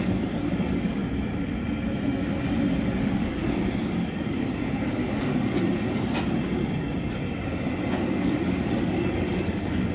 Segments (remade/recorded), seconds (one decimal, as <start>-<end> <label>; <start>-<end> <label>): 0.0-1.0 remade; 1.0-3.0 recorded; 3.0-5.0 remade; 5.0-8.0 recorded; 8.0-9.9 remade